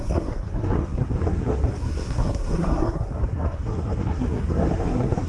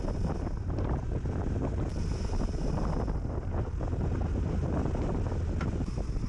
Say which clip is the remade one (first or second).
first